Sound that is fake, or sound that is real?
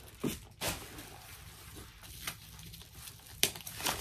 real